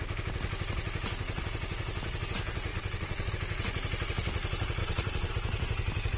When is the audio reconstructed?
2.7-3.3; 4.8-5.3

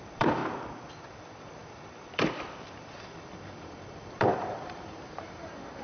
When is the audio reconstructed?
0.0-0.4; 0.9-5.8

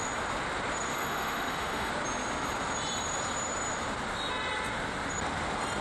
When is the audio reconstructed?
0.9-1.9

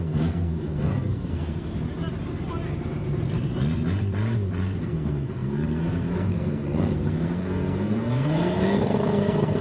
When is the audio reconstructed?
0.0-1.7; 4.8-9.6